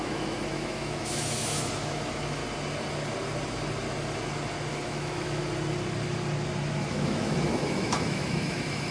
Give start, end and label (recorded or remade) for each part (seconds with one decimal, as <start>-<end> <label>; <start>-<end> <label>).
0.0-2.4 remade; 2.4-4.7 recorded; 4.7-5.4 remade; 5.4-6.8 recorded; 6.8-8.9 remade